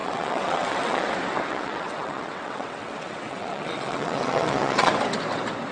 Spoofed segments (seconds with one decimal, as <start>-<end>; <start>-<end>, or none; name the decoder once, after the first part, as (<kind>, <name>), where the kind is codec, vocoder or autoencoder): 0.0-1.1 (vocoder, WaveNeXt); 1.5-4.9